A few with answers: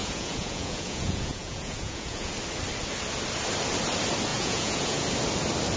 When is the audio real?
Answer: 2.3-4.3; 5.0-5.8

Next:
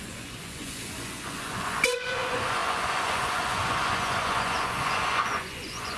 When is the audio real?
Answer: none

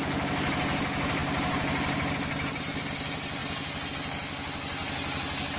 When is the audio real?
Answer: 0.0-5.6

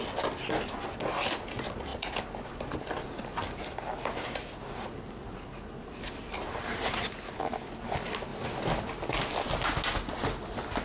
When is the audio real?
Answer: 0.0-10.8